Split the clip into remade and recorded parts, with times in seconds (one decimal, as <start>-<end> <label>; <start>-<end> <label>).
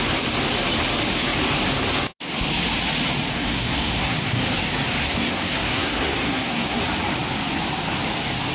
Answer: 0.0-3.3 recorded; 3.3-4.4 remade; 4.4-5.0 recorded; 5.0-6.8 remade; 6.8-8.5 recorded